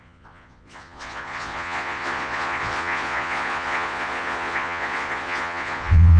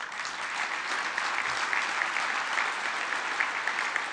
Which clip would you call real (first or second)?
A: second